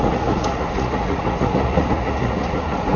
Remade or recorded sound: remade